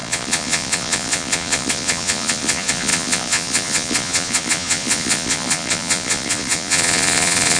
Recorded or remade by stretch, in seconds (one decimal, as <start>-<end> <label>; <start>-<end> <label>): 0.0-7.6 remade